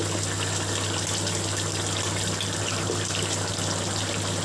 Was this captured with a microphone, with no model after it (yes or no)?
yes